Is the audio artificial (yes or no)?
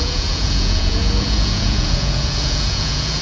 yes